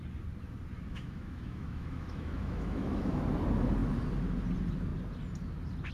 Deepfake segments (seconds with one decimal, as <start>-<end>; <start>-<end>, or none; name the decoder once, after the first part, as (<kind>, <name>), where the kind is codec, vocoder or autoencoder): 0.9-3.2 (autoencoder, DAC-VAE)